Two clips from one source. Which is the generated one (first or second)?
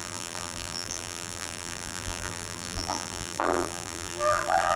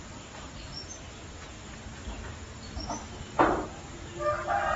first